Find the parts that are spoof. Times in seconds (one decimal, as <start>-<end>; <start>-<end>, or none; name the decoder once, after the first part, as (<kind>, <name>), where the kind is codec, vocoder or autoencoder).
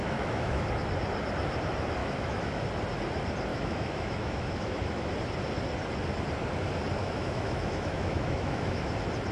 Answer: 0.0-0.7 (autoencoder, DAC-VAE); 2.0-2.6; 3.5-5.1; 7.0-8.9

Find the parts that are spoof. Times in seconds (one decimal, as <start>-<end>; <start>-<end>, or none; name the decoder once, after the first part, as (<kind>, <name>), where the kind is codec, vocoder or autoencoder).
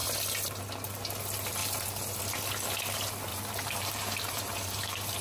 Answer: 1.6-2.2 (vocoder, BigVGAN v2); 3.3-5.2